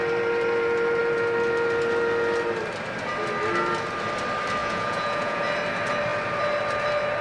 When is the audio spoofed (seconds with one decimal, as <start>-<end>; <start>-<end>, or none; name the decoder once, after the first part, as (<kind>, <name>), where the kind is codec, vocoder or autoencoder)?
4.6-5.4 (vocoder, Vocos)